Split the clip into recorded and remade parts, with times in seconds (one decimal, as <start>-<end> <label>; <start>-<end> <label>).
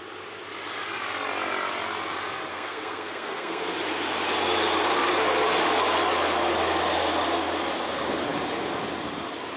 0.0-2.5 recorded; 2.5-3.7 remade; 3.7-9.6 recorded